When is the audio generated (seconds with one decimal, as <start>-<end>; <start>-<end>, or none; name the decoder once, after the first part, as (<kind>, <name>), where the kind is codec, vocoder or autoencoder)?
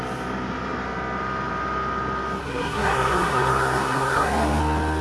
2.4-4.6 (codec, SNAC)